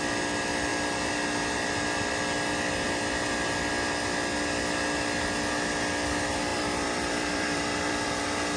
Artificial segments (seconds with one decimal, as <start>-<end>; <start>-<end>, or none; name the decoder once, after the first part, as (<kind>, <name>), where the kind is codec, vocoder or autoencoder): 6.5-8.2 (vocoder, BigVGAN v2)